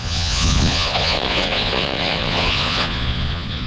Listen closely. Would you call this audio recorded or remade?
remade